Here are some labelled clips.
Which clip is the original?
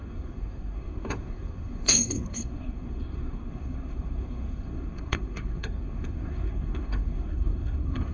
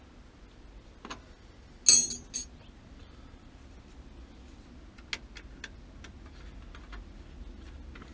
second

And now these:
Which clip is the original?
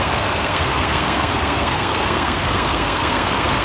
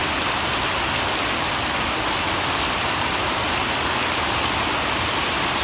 second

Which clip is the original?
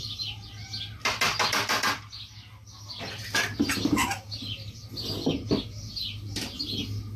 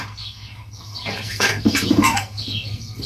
first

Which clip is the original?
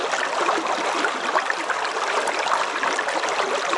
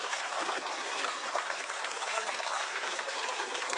first